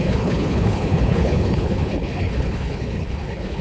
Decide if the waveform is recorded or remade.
remade